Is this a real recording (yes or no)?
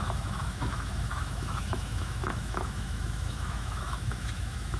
no